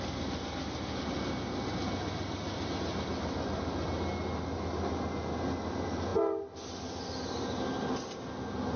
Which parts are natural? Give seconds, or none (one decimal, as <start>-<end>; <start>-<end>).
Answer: 0.0-8.8